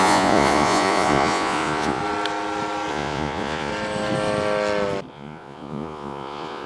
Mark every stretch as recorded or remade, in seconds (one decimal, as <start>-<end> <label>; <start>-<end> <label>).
0.0-2.0 remade; 2.0-2.9 recorded; 2.9-3.7 remade; 3.7-5.1 recorded; 5.1-6.7 remade